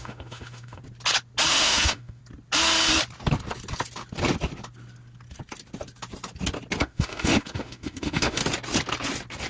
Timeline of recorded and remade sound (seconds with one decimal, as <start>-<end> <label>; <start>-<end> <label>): 0.0-0.8 remade; 0.8-1.5 recorded; 1.5-2.2 remade; 2.2-6.8 recorded; 6.8-8.4 remade; 8.4-9.5 recorded

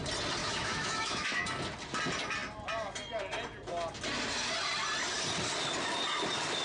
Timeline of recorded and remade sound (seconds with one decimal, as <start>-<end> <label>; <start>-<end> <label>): 0.0-0.4 recorded; 0.4-1.4 remade; 1.4-6.6 recorded

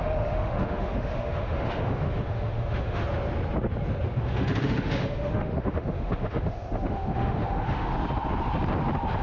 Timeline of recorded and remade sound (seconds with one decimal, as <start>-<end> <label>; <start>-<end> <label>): 0.0-3.0 remade; 3.0-4.2 recorded; 4.2-7.9 remade; 7.9-9.2 recorded

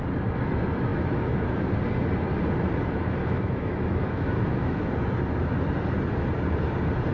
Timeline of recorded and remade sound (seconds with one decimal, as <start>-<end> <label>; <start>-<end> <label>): 0.0-0.9 recorded; 0.9-1.7 remade; 1.7-3.2 recorded; 3.2-4.8 remade; 4.8-7.1 recorded